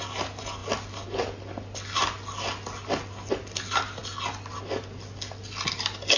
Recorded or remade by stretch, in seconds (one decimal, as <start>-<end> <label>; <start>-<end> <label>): 0.0-6.2 recorded